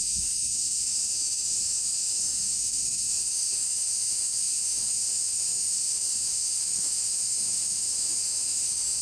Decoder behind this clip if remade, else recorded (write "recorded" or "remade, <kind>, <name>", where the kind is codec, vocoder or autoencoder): remade, autoencoder, DAC-VAE